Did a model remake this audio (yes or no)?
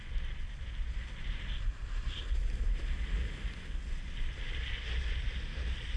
no